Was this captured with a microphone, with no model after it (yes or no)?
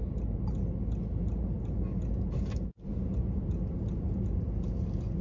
yes